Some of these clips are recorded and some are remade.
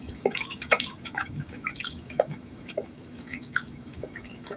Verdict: remade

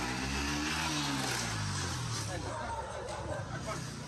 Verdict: recorded